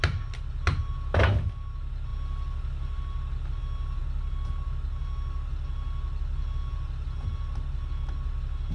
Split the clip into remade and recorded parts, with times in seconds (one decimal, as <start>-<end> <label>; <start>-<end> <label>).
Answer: 0.0-8.7 recorded